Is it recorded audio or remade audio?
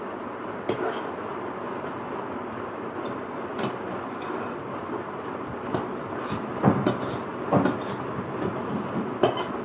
recorded